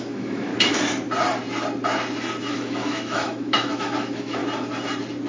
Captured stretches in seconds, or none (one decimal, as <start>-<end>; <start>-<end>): 0.5-2.4; 4.4-5.3